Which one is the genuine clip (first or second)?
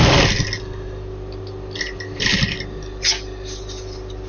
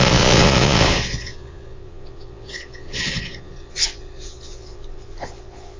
first